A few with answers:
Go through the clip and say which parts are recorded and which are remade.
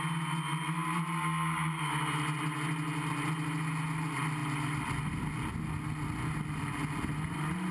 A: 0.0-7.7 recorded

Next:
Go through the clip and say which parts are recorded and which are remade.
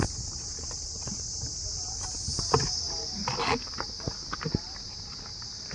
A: 0.0-5.7 recorded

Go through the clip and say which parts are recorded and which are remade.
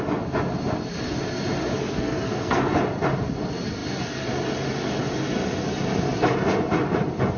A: 0.0-1.8 recorded; 1.8-2.8 remade; 2.8-7.4 recorded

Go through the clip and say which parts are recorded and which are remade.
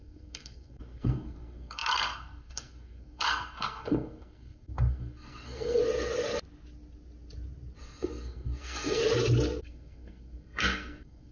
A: 0.0-5.8 remade; 5.8-7.8 recorded; 7.8-9.0 remade; 9.0-9.6 recorded; 9.6-11.3 remade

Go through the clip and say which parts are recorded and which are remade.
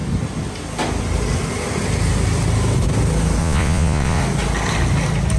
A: 0.0-3.4 recorded; 3.4-4.2 remade; 4.2-5.4 recorded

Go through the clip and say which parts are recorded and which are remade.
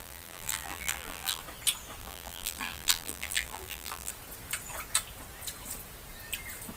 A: 0.0-1.4 remade; 1.4-2.0 recorded; 2.0-4.1 remade; 4.1-6.8 recorded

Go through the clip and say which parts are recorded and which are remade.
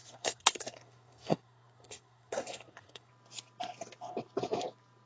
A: 0.0-3.1 remade; 3.1-5.1 recorded